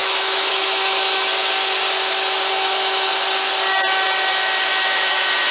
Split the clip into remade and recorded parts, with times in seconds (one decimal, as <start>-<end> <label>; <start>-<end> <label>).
0.0-1.3 remade; 1.3-2.5 recorded; 2.5-3.1 remade; 3.1-4.3 recorded; 4.3-5.5 remade